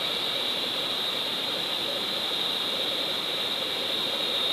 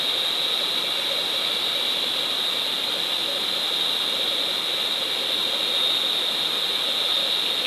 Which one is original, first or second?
second